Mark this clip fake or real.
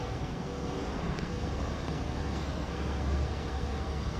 fake